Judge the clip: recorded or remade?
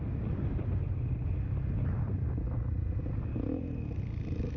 recorded